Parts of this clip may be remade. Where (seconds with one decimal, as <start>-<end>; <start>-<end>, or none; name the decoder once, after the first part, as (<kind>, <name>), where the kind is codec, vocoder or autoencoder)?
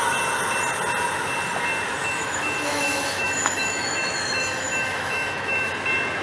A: 2.0-5.7 (autoencoder, DAC-VAE)